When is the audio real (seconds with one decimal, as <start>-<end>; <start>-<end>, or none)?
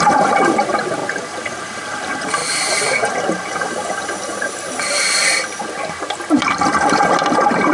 1.0-1.6